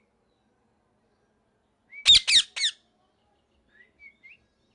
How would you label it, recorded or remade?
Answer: recorded